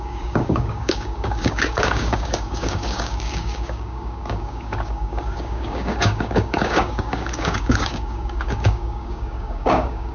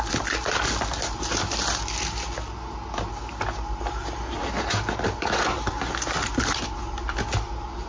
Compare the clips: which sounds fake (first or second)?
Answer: first